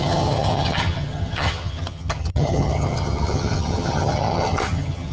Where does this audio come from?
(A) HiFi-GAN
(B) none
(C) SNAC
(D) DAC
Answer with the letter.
A